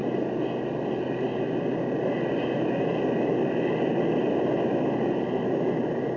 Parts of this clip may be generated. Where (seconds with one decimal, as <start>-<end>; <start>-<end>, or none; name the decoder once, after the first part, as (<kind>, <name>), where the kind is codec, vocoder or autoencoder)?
none